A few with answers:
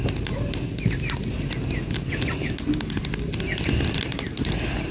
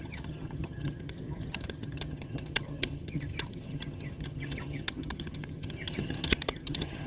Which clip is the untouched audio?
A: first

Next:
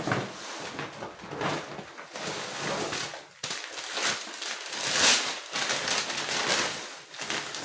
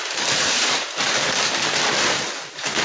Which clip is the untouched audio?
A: first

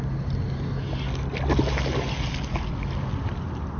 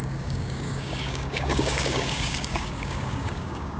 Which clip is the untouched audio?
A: first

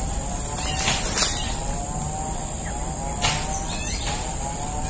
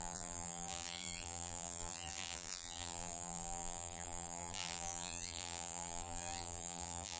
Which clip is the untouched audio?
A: first